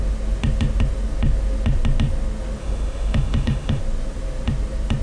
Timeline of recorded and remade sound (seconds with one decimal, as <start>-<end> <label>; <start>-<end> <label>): 0.0-2.6 recorded; 2.6-3.8 remade; 3.8-5.0 recorded